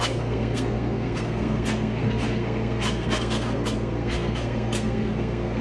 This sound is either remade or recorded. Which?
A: remade